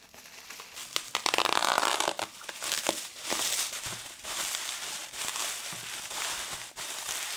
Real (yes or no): yes